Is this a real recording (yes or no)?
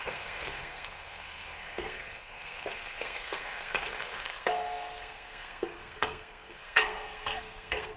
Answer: no